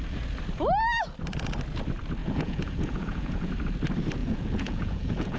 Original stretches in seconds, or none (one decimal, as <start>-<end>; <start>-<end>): 0.0-2.2; 3.5-4.2